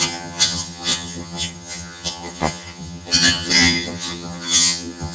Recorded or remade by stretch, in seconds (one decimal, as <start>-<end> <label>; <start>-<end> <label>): 0.0-5.1 remade